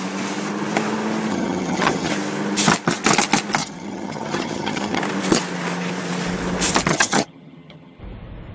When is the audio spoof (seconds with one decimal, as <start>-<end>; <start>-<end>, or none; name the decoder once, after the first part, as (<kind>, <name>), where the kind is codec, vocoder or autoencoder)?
1.3-2.1 (vocoder, HiFi-GAN); 3.6-5.0; 6.9-8.0

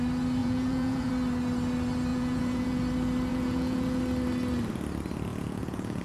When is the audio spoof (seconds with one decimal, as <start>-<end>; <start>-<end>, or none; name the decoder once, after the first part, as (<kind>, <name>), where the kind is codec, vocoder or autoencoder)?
0.4-1.1 (vocoder, Vocos); 2.1-2.8; 3.3-4.0; 5.3-6.0

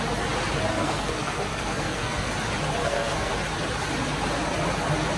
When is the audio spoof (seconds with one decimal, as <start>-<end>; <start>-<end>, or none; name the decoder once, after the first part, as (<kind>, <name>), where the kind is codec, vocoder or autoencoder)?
0.7-2.3 (codec, SNAC); 2.8-3.3

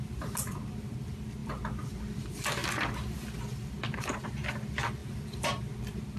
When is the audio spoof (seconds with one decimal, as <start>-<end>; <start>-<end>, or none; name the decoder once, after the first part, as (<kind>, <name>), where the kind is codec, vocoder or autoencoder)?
5.0-5.7 (vocoder, BigVGAN v2)

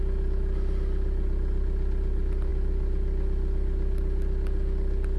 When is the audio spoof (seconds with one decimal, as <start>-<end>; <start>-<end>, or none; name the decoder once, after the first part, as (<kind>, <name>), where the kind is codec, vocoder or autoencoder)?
none

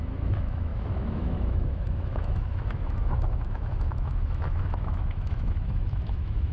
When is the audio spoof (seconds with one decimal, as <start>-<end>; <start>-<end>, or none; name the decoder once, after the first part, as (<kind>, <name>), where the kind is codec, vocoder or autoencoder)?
0.0-6.5 (autoencoder, DAC-VAE)

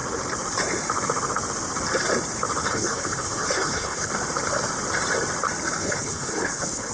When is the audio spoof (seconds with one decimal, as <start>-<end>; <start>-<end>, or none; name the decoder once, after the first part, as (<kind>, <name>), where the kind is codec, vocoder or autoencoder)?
2.6-4.1 (codec, HILCodec); 5.8-6.9